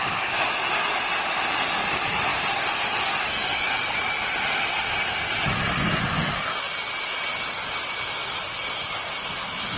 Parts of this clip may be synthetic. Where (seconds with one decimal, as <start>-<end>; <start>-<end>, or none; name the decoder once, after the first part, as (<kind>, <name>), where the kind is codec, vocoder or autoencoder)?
none